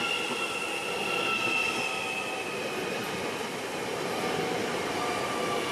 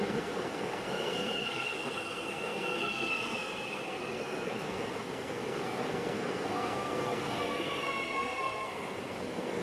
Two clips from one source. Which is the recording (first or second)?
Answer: first